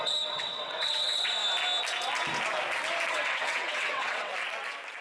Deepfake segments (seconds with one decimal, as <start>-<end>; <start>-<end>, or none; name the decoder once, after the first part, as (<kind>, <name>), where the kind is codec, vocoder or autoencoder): 0.0-1.4 (vocoder, WaveNeXt); 3.1-4.3